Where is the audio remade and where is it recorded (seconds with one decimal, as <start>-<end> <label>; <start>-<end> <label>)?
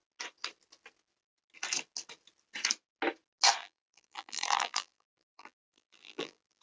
0.0-3.6 recorded; 3.6-6.6 remade